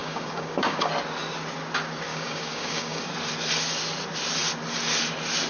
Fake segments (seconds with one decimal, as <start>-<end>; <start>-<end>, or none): 0.0-0.9; 2.1-3.1